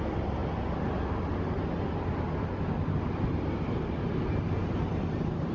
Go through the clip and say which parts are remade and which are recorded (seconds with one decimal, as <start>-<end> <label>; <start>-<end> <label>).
0.0-5.5 recorded